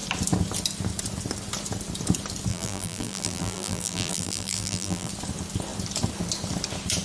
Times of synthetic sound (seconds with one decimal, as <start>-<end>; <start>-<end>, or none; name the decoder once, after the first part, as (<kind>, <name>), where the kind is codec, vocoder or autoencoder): 2.5-5.1 (vocoder, BigVGAN v2)